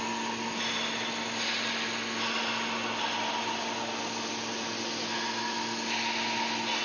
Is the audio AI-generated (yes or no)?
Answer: no